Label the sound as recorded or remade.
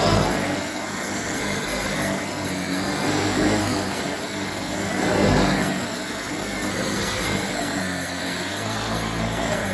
remade